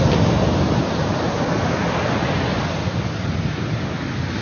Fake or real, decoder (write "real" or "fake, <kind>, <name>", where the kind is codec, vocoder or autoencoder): real